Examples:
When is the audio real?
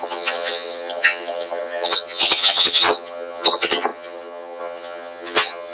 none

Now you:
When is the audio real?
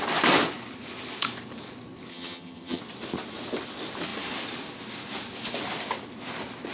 0.0-2.1; 2.8-6.7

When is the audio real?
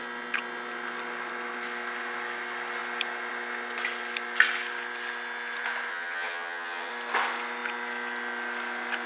0.0-5.9; 6.9-9.1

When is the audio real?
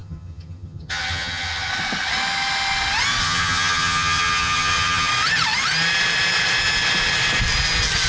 1.7-3.2; 5.1-8.1